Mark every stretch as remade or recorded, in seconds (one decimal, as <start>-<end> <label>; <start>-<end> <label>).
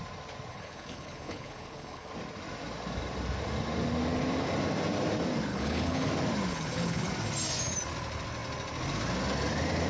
0.0-0.5 recorded; 0.5-2.1 remade; 2.1-5.5 recorded; 5.5-6.1 remade; 6.1-6.5 recorded; 6.5-7.1 remade; 7.1-9.9 recorded